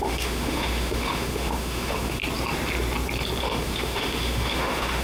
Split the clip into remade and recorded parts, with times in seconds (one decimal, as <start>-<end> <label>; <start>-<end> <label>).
0.0-2.2 remade; 2.2-3.4 recorded; 3.4-5.0 remade